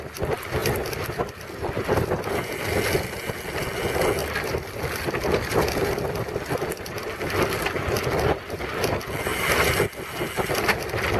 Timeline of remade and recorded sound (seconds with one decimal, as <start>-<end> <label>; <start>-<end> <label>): 0.0-11.2 recorded